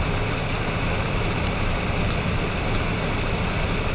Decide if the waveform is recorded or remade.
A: recorded